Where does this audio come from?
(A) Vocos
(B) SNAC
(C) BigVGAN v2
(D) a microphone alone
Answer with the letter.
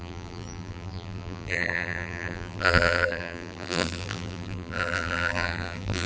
C